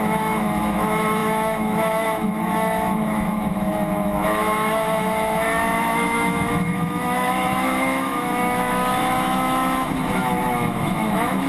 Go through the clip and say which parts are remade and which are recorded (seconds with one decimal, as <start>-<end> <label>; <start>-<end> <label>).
0.0-11.5 remade